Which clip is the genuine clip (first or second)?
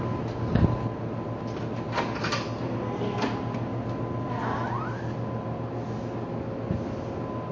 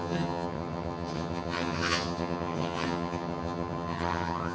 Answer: first